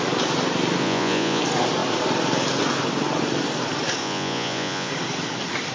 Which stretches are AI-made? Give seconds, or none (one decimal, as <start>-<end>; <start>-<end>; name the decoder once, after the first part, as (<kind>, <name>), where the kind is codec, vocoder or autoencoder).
0.8-1.4 (vocoder, Vocos); 4.0-4.9